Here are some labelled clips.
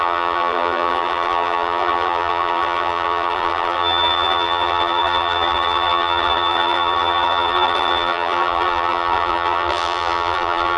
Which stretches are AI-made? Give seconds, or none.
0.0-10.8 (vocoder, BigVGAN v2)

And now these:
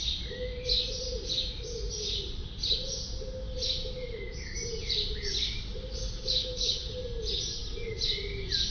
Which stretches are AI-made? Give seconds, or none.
6.4-6.9 (codec, HILCodec)

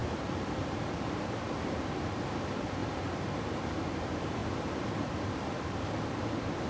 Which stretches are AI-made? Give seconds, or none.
0.0-4.4 (vocoder, BigVGAN v2); 5.0-6.7

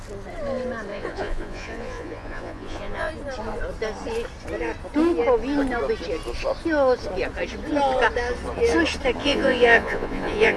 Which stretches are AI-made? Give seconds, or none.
0.9-3.1 (vocoder, Vocos); 9.2-10.6

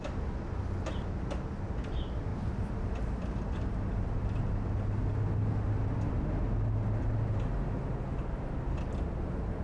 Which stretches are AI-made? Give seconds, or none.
2.3-4.2 (vocoder, BigVGAN v2)

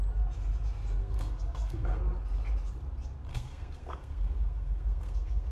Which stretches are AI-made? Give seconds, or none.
1.0-2.0 (codec, SNAC); 3.3-5.5

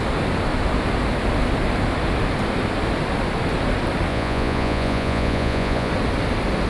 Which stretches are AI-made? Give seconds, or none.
4.1-5.9 (vocoder, Vocos)

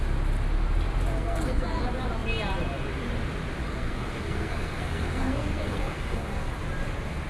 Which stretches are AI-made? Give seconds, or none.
1.1-1.8 (codec, SNAC); 3.6-6.6